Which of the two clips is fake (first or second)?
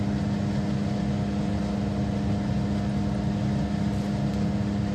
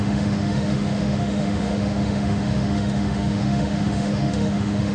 second